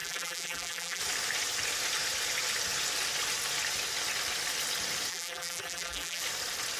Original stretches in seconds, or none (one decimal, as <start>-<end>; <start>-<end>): 1.0-5.1; 6.2-6.8